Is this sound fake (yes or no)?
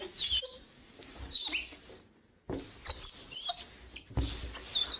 no